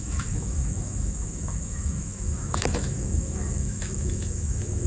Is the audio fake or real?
fake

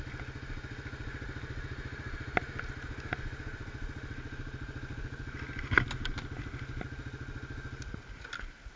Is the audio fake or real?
real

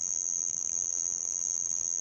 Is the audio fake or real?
fake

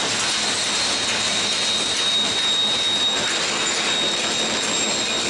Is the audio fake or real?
real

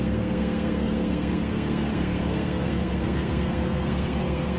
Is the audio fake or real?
fake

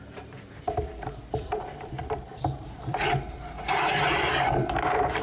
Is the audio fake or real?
fake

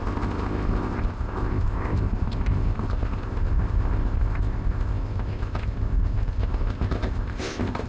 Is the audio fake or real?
fake